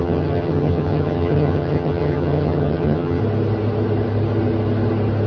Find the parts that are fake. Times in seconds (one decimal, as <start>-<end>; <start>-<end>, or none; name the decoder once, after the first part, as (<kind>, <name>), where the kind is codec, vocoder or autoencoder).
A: 0.0-3.2 (vocoder, HiFi-GAN)